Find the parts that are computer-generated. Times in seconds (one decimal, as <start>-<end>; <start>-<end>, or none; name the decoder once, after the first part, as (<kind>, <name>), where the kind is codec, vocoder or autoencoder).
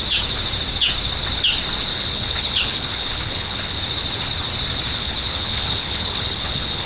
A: 1.9-3.8 (codec, HILCodec); 4.9-6.9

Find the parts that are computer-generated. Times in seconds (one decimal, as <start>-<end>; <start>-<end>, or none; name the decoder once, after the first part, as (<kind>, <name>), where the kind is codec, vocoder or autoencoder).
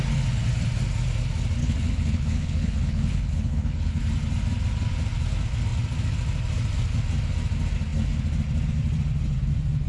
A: 1.6-4.0 (codec, HILCodec)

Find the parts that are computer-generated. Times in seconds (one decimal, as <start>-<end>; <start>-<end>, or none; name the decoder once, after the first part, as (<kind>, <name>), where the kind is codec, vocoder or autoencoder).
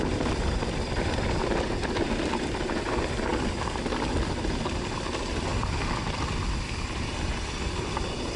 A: none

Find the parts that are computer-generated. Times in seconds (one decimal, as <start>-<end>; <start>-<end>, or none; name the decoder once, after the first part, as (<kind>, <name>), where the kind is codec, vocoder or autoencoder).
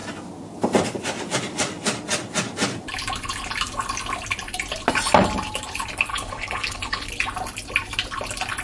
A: 6.1-7.1 (codec, HILCodec)